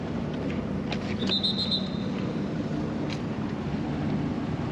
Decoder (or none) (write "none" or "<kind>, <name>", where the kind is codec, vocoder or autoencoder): none